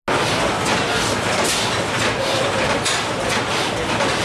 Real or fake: real